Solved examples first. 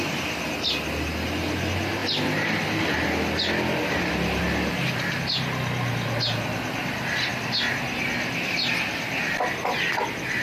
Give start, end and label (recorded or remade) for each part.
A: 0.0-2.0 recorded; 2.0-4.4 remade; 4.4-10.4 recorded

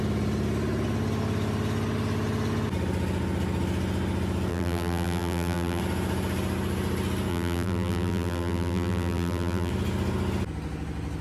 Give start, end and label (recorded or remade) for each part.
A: 0.0-4.5 recorded; 4.5-5.8 remade; 5.8-7.3 recorded; 7.3-9.7 remade; 9.7-11.2 recorded